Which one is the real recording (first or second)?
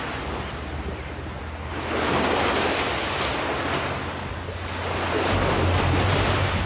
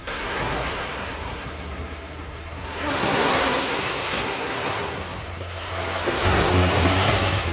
first